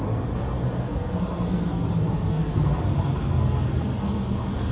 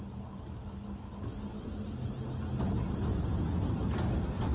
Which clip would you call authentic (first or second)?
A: second